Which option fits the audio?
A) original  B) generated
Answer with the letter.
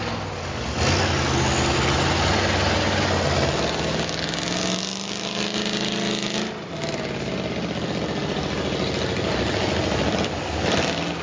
A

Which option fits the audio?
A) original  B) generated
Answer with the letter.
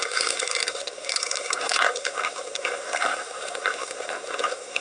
B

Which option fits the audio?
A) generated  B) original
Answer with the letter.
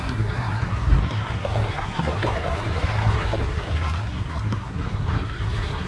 A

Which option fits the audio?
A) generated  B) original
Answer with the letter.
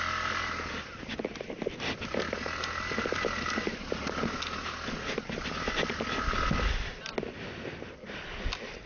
B